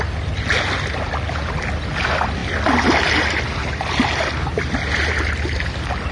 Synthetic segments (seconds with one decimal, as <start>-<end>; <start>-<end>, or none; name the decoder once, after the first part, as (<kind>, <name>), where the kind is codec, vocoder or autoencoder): none